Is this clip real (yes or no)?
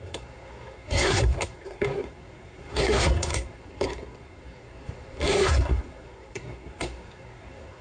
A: no